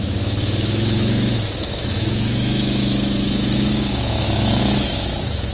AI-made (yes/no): yes